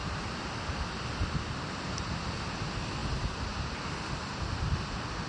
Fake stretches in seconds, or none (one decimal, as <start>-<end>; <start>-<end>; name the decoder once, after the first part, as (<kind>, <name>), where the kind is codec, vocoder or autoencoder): 3.0-4.1 (vocoder, BigVGAN v2)